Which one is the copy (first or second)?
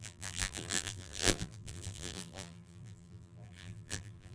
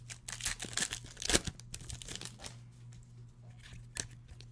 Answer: first